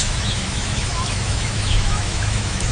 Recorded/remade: remade